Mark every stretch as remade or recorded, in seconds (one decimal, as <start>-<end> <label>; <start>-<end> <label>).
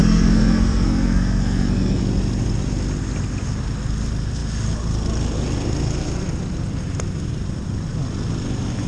0.0-2.0 remade; 2.0-8.9 recorded